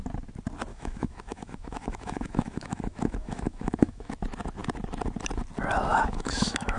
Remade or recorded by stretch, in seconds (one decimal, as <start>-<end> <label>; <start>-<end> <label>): 0.0-0.7 recorded; 0.7-4.1 remade; 4.1-5.9 recorded; 5.9-6.8 remade